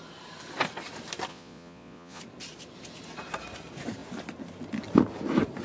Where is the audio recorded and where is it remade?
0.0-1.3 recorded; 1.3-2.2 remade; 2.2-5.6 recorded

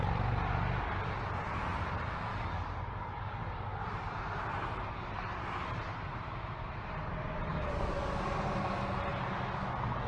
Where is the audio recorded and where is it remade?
0.0-2.3 recorded; 2.3-3.8 remade; 3.8-7.5 recorded; 7.5-8.2 remade; 8.2-10.1 recorded

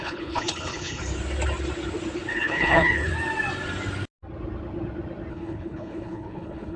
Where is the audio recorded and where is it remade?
0.0-1.0 remade; 1.0-2.3 recorded; 2.3-3.1 remade; 3.1-5.3 recorded; 5.3-6.8 remade

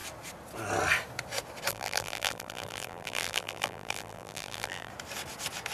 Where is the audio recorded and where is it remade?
0.0-1.7 recorded; 1.7-4.9 remade; 4.9-5.7 recorded